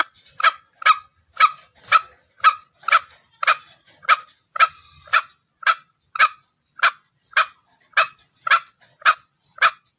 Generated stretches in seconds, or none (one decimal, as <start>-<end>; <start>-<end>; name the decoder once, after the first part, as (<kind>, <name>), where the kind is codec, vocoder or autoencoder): none